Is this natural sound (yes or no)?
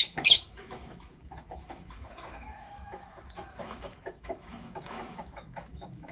no